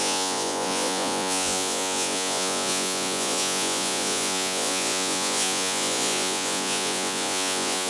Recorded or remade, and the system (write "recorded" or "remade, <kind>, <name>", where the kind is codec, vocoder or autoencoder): remade, vocoder, Vocos